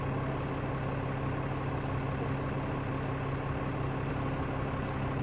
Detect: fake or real real